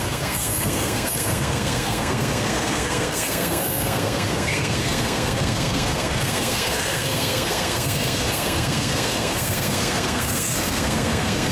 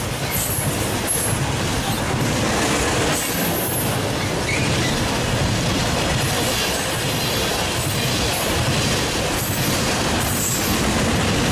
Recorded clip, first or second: second